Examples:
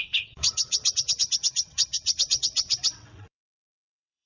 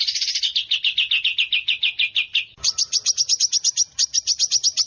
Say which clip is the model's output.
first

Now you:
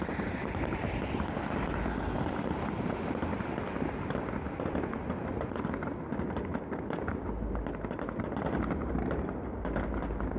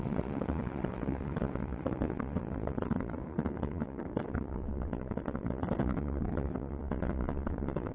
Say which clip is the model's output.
second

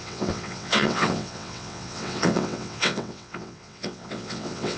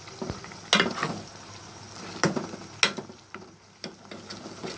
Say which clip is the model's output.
first